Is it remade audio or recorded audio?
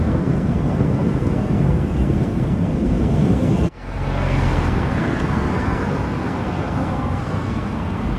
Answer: remade